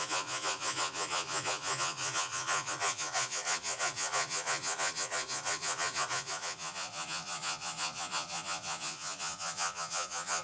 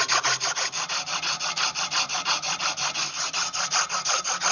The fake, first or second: first